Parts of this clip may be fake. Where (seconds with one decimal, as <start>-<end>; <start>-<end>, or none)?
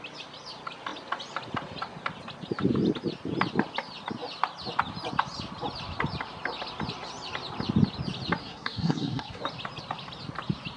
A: 8.4-9.4